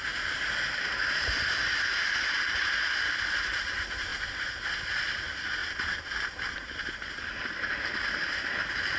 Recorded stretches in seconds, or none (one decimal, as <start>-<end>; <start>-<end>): 0.0-9.0